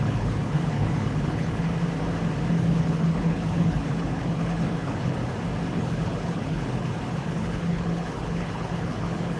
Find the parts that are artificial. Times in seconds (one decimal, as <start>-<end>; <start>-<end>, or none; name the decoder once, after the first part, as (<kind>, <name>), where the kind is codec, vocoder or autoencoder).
0.0-1.7 (codec, HILCodec); 2.5-5.2; 5.7-9.4